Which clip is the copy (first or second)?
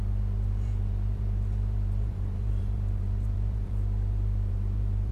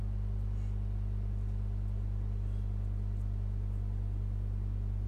first